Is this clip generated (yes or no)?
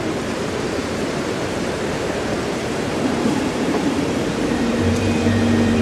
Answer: yes